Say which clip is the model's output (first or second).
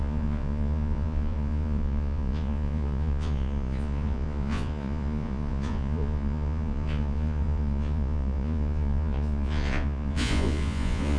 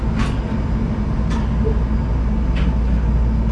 first